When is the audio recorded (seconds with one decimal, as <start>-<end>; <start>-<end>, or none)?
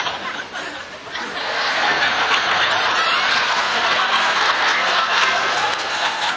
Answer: 0.0-1.4; 2.7-3.3